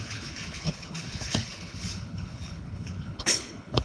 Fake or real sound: fake